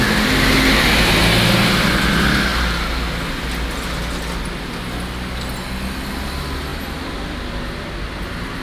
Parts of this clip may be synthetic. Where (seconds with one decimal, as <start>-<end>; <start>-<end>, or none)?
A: none

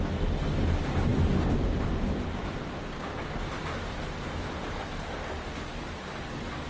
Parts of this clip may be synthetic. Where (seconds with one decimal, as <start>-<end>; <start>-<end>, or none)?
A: 1.1-4.7

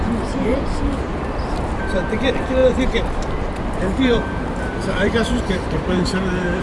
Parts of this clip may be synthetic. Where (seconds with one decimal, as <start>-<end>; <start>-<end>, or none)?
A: 0.0-6.6

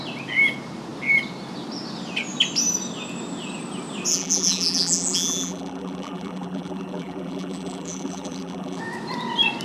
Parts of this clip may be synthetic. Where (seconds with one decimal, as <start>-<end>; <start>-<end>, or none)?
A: 4.1-8.8